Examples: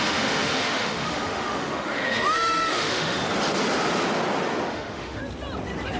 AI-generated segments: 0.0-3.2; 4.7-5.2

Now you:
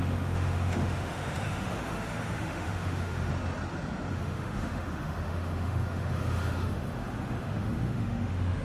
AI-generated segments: 0.0-3.3; 4.1-8.6

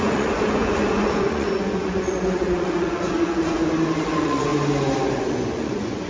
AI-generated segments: 0.0-4.5; 5.2-6.1

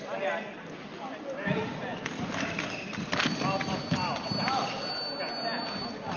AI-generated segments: none

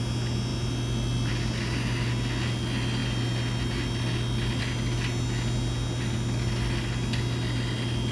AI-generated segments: none

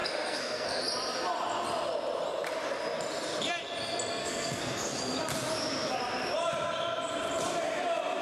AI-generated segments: 0.0-0.8; 4.2-5.0

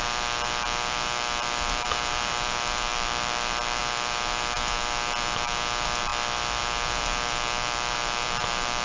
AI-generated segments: 0.0-8.8

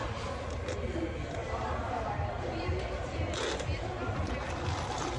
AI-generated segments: none